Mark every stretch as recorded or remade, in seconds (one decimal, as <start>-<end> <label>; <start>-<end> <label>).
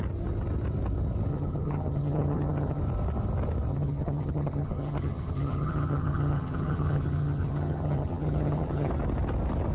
0.0-1.3 recorded; 1.3-2.8 remade; 2.8-3.7 recorded; 3.7-8.9 remade; 8.9-9.7 recorded